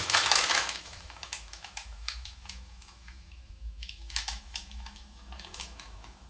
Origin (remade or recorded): remade